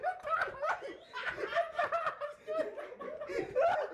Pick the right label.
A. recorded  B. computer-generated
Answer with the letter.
B